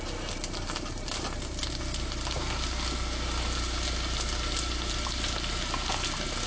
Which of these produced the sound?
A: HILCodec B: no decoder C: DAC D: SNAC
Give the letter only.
B